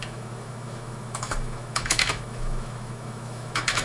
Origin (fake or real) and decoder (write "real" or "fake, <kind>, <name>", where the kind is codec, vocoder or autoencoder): fake, autoencoder, DAC-VAE